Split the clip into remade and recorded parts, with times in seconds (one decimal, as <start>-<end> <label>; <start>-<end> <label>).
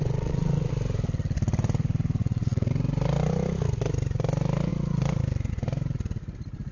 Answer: 0.0-0.7 remade; 0.7-2.2 recorded; 2.2-2.7 remade; 2.7-6.7 recorded